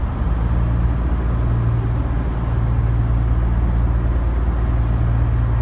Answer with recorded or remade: recorded